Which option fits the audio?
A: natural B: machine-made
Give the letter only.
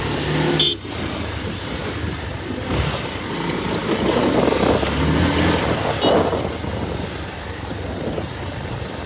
A